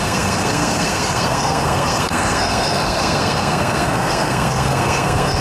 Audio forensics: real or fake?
fake